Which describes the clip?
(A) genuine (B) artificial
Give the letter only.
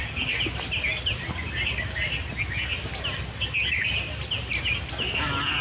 A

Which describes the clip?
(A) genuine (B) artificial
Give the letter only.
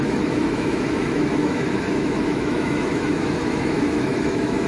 B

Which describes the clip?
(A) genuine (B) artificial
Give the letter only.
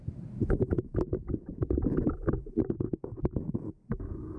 A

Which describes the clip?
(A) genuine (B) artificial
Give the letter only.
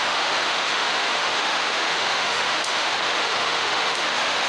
B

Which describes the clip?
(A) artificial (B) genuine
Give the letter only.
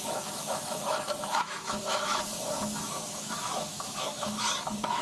A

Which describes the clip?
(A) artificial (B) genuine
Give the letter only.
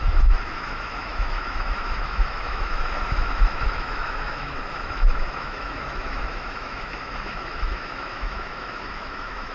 A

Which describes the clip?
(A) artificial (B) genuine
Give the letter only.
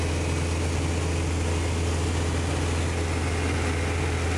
B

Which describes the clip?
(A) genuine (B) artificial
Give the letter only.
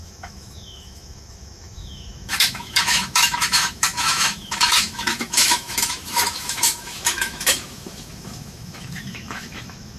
B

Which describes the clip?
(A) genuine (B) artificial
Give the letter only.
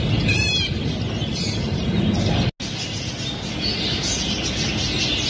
A